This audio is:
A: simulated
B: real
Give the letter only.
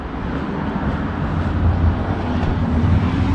B